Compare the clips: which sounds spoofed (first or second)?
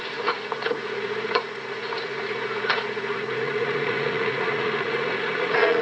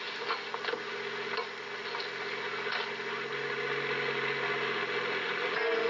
first